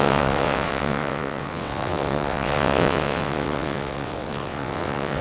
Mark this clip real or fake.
fake